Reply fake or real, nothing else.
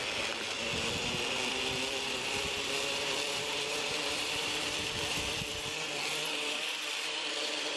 fake